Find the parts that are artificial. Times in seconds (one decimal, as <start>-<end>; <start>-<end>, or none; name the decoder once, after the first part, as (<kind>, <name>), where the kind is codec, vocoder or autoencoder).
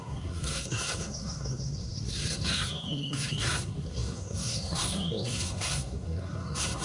0.0-6.8 (codec, SNAC)